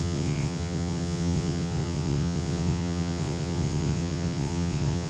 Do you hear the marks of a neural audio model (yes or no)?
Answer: yes